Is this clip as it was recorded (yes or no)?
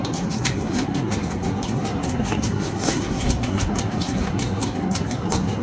no